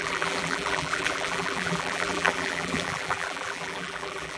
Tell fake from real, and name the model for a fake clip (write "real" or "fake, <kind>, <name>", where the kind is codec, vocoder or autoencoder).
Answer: fake, vocoder, BigVGAN v2